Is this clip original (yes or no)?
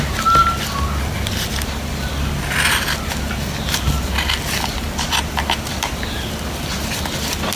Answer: yes